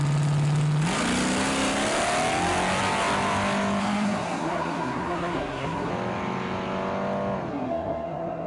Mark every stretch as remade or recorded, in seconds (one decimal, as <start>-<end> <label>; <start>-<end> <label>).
0.0-3.8 recorded; 3.8-5.9 remade; 5.9-7.5 recorded; 7.5-8.5 remade